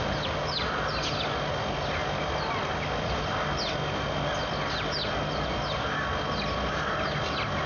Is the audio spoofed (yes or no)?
no